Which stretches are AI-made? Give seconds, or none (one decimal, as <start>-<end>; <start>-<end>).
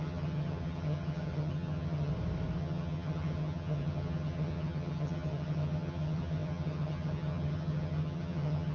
0.0-2.1; 2.6-8.7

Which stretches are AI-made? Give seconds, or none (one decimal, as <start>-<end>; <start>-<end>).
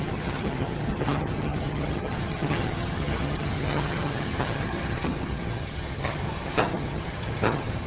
0.0-7.9